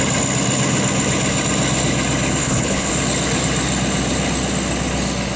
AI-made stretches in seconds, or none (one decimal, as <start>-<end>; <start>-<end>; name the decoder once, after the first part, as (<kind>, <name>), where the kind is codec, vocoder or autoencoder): 2.4-2.9 (codec, HILCodec)